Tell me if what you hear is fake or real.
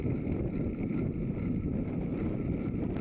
real